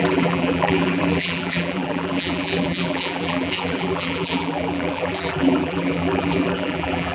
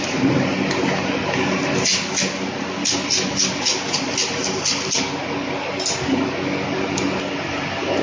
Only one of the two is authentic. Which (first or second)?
second